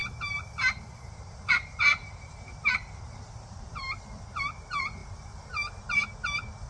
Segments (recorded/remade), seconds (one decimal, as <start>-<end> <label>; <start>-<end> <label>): 0.0-4.0 remade; 4.0-5.0 recorded; 5.0-6.1 remade; 6.1-6.7 recorded